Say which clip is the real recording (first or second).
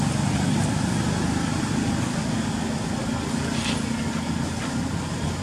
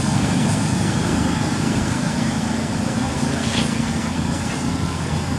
first